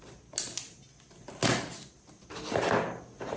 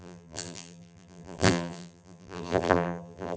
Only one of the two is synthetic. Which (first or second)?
second